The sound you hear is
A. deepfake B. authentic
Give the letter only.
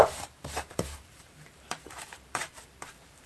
A